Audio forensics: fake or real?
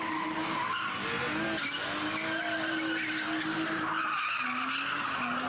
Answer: real